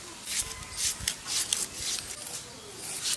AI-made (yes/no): no